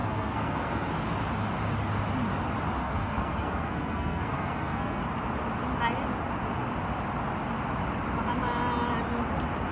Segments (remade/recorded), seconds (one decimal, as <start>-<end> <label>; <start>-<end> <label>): 0.0-0.9 remade; 0.9-2.8 recorded; 2.8-5.0 remade; 5.0-9.7 recorded